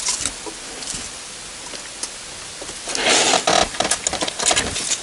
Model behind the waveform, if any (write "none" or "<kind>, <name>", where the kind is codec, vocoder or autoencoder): none